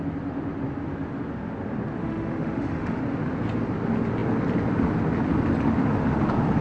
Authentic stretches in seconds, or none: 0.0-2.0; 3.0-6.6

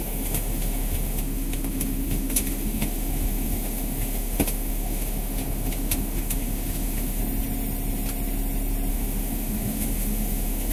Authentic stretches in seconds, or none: 7.2-8.9